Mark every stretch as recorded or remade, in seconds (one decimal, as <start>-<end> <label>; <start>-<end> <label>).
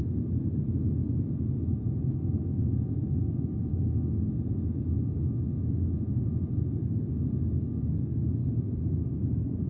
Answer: 0.0-8.4 recorded; 8.4-9.7 remade